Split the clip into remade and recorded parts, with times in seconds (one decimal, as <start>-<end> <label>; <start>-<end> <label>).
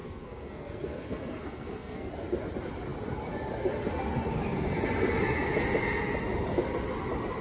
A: 0.0-2.1 remade; 2.1-7.4 recorded